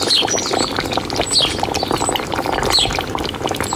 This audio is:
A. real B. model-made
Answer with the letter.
A